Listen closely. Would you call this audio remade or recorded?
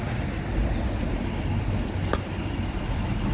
recorded